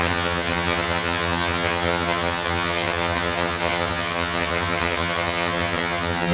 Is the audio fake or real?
fake